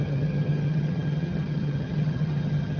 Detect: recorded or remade remade